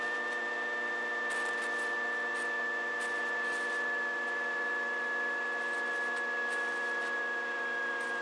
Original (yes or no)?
yes